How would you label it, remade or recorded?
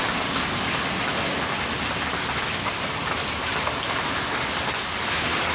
recorded